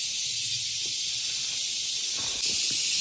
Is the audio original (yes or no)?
yes